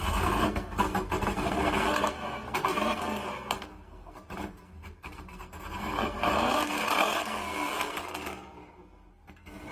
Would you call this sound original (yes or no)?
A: no